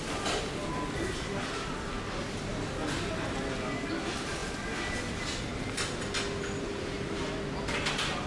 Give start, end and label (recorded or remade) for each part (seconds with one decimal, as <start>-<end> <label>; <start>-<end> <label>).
0.0-8.3 recorded